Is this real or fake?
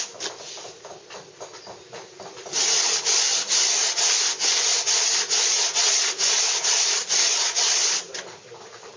real